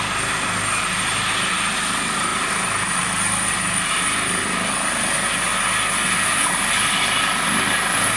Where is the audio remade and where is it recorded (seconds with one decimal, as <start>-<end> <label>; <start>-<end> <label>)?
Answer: 0.0-8.2 recorded